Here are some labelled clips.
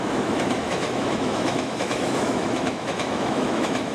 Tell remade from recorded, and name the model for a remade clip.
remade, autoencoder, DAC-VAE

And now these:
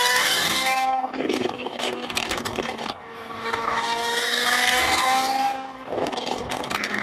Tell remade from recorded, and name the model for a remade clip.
remade, codec, DAC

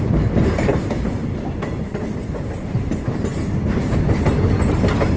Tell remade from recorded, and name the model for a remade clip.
recorded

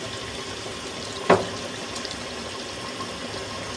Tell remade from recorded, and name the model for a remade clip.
remade, vocoder, BigVGAN v2